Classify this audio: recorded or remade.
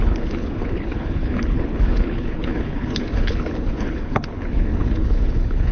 remade